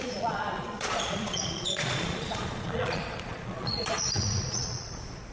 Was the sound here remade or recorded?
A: remade